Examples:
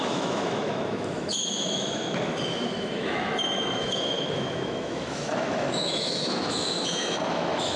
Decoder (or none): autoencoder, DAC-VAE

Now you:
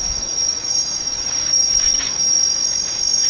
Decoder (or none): codec, DAC